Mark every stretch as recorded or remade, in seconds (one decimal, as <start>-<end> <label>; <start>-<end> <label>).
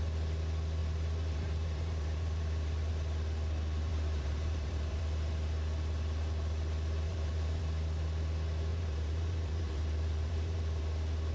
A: 0.0-0.8 recorded; 0.8-2.9 remade; 2.9-3.9 recorded; 3.9-5.0 remade; 5.0-7.1 recorded; 7.1-7.6 remade; 7.6-8.7 recorded; 8.7-10.8 remade; 10.8-11.3 recorded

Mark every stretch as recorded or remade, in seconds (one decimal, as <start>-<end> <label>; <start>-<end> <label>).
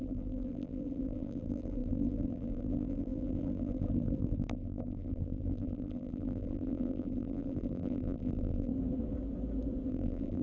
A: 0.0-8.7 remade; 8.7-9.9 recorded; 9.9-10.4 remade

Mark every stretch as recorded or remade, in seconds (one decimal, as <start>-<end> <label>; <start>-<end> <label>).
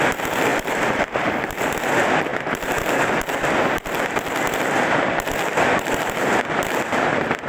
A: 0.0-0.5 recorded; 0.5-1.8 remade; 1.8-7.5 recorded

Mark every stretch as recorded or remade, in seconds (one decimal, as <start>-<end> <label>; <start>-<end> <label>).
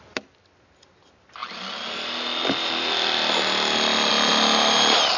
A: 0.0-5.2 recorded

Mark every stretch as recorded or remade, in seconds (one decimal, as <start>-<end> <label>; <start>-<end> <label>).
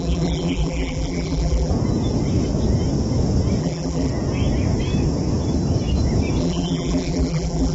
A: 0.0-1.7 remade; 1.7-3.6 recorded; 3.6-4.1 remade; 4.1-6.4 recorded; 6.4-7.7 remade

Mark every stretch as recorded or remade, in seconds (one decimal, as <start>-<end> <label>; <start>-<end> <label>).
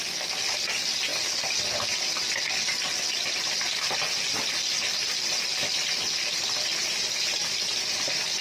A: 0.0-8.4 recorded